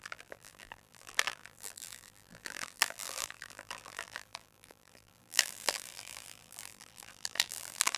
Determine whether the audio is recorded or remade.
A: remade